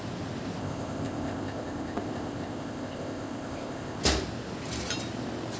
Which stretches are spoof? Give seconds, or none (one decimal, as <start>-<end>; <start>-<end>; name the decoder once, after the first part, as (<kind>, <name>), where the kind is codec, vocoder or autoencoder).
0.6-4.0 (codec, ZipCodec)